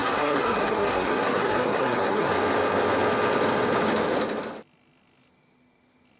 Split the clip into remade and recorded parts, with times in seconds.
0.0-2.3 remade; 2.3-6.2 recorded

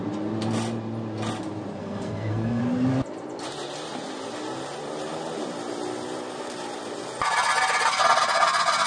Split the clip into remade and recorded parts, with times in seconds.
0.0-1.8 recorded; 1.8-2.6 remade; 2.6-8.9 recorded

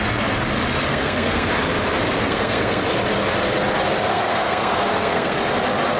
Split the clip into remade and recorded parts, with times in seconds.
0.0-0.9 recorded; 0.9-1.5 remade; 1.5-2.2 recorded; 2.2-2.8 remade; 2.8-4.1 recorded; 4.1-5.4 remade; 5.4-6.0 recorded

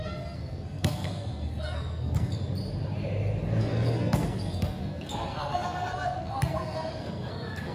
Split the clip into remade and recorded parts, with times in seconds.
0.0-2.4 remade; 2.4-3.6 recorded; 3.6-7.7 remade